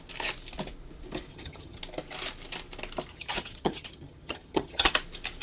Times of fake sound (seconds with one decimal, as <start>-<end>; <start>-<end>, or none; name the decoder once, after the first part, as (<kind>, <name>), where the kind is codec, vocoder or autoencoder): 1.3-1.8 (vocoder, HiFi-GAN); 3.1-4.9

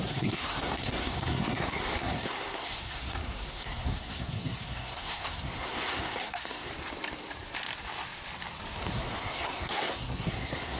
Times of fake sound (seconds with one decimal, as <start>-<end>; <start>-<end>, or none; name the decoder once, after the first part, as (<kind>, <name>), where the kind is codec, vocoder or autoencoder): 0.0-6.7 (codec, SNAC); 8.9-10.8

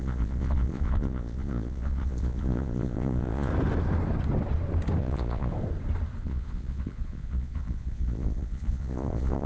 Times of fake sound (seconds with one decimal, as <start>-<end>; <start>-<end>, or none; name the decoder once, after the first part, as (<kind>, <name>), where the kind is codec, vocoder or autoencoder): 0.0-3.5 (vocoder, Vocos); 5.0-5.5; 6.2-9.5

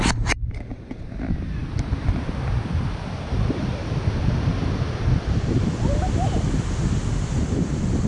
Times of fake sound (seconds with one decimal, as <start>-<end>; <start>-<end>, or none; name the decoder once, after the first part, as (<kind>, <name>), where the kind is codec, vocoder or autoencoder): none

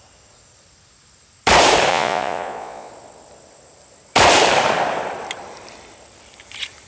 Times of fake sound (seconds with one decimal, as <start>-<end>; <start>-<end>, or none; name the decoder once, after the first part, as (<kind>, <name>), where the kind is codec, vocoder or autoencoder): 1.9-2.9 (vocoder, Vocos)